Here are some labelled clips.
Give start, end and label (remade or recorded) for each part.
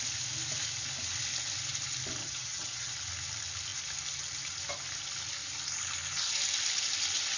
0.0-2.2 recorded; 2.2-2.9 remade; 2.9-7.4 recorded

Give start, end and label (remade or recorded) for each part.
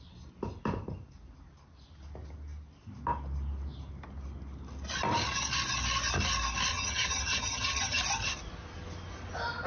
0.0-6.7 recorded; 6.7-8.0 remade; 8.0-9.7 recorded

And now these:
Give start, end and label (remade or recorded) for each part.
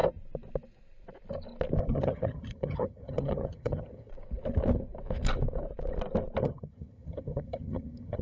0.0-1.8 recorded; 1.8-4.1 remade; 4.1-6.4 recorded; 6.4-8.2 remade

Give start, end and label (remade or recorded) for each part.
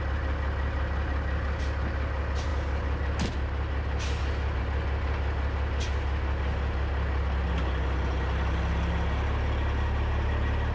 0.0-10.7 recorded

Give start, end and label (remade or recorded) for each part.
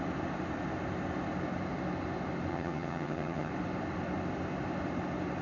0.0-2.5 recorded; 2.5-3.5 remade; 3.5-5.4 recorded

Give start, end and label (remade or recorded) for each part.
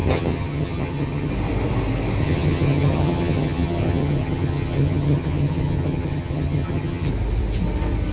0.0-1.3 remade; 1.3-2.2 recorded; 2.2-7.1 remade; 7.1-8.1 recorded